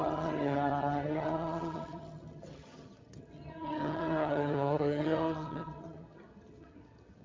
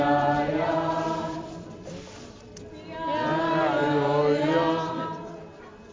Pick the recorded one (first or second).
second